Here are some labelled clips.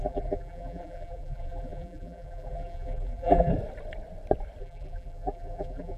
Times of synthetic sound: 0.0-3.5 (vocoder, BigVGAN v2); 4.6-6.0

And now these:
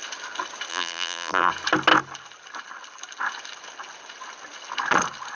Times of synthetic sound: 0.7-1.5 (vocoder, BigVGAN v2)